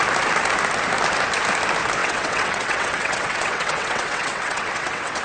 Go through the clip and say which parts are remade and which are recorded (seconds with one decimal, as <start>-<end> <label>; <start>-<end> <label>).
0.0-2.0 recorded; 2.0-5.2 remade